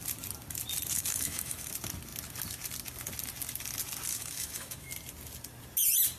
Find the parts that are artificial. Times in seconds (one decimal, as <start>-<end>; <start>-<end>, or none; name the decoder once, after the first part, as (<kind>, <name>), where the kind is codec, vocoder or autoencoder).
0.9-1.7 (autoencoder, DAC-VAE); 4.1-4.9